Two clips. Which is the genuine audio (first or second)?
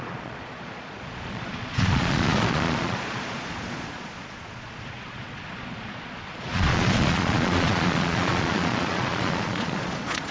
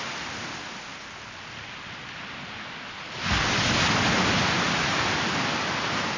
second